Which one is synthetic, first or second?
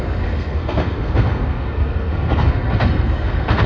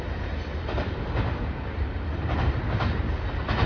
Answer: first